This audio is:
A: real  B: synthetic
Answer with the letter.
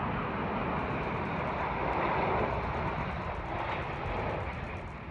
A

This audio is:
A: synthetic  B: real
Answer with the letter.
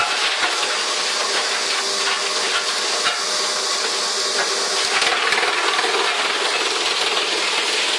B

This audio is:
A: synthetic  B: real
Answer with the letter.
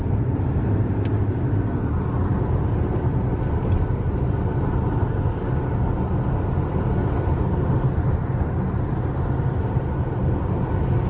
B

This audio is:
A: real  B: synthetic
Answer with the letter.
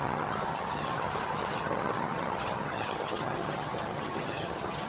B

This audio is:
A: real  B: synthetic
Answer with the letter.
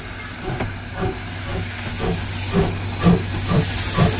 A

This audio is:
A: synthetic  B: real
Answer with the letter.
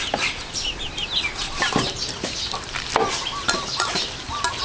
B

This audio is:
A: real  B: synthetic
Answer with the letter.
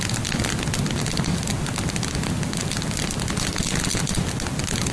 A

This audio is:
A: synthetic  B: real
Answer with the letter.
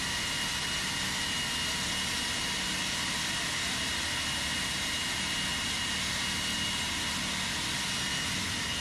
B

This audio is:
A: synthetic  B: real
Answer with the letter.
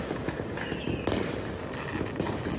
B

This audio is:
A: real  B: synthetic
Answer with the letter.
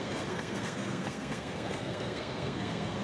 B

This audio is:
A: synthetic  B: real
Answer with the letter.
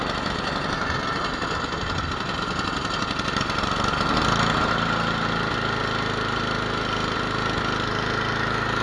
B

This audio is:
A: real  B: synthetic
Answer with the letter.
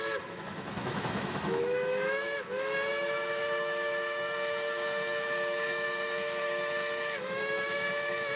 B